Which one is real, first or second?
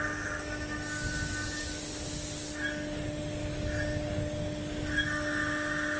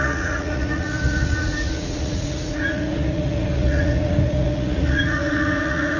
first